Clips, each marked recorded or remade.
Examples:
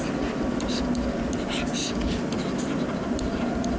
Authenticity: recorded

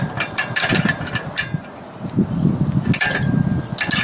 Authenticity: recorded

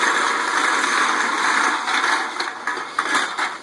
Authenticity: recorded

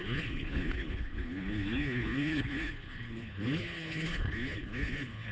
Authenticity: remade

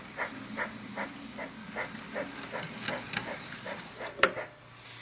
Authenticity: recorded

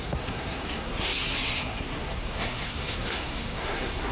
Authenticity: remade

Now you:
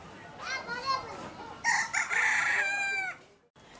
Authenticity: recorded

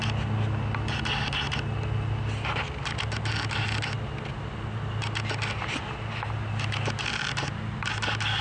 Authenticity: recorded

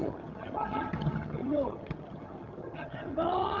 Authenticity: remade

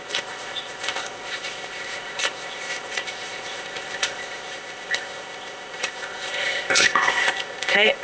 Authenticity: remade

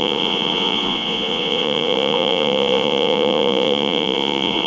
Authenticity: remade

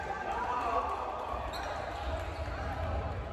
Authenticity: recorded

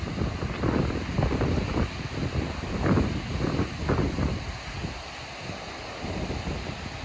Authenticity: recorded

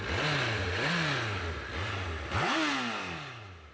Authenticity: recorded